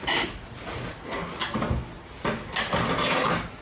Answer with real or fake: real